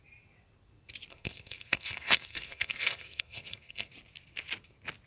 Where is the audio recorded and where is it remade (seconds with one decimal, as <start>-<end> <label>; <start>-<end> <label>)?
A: 0.0-1.1 recorded; 1.1-3.9 remade; 3.9-5.1 recorded